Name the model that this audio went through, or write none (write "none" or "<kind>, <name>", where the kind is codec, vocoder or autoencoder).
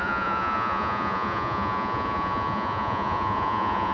vocoder, Vocos